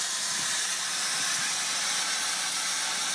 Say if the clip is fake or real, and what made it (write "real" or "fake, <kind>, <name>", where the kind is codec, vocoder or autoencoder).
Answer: real